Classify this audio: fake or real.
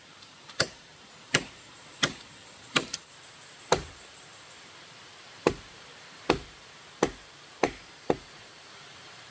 fake